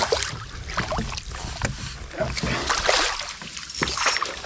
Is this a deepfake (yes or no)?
no